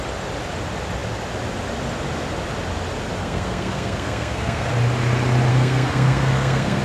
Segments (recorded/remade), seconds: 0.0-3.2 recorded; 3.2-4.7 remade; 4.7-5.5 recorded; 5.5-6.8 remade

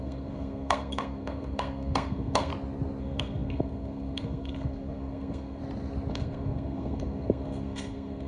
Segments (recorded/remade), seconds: 0.0-2.5 remade; 2.5-3.0 recorded; 3.0-5.6 remade; 5.6-6.1 recorded; 6.1-8.3 remade

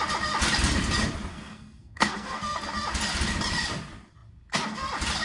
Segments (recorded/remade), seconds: 0.0-1.3 recorded; 1.3-2.7 remade; 2.7-5.2 recorded

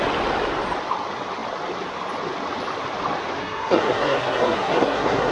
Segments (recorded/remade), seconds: 0.0-3.4 recorded; 3.4-5.3 remade

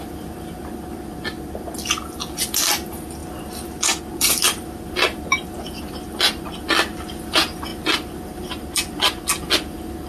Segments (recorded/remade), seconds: 0.0-10.1 recorded

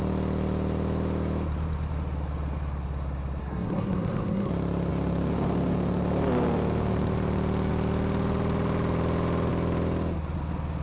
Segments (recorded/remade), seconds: 0.0-3.4 recorded; 3.4-4.5 remade; 4.5-10.8 recorded

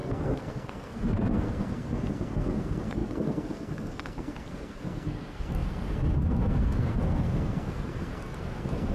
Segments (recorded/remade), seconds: 0.0-8.9 remade

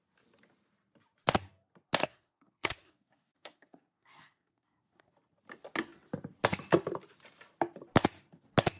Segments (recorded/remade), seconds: 0.0-2.0 recorded; 2.0-5.1 remade; 5.1-8.8 recorded